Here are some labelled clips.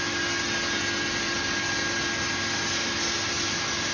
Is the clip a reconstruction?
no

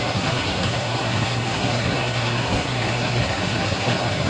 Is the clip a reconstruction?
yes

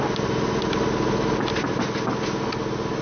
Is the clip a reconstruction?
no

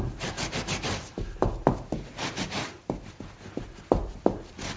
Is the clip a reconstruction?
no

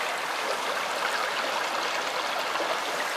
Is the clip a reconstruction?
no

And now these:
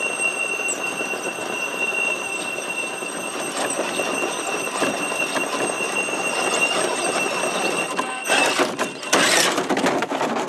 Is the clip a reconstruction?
no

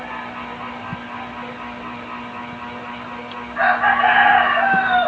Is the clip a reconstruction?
no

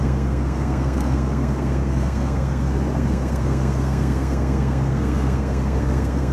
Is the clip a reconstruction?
yes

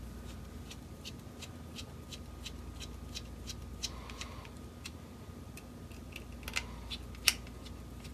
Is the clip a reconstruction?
no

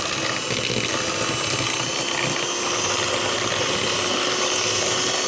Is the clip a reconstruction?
no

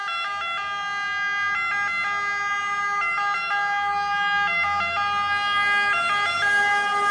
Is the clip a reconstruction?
no